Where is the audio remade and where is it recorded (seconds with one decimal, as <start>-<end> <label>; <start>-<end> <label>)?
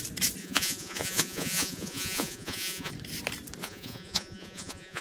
0.0-0.4 recorded; 0.4-2.9 remade; 2.9-3.6 recorded; 3.6-5.0 remade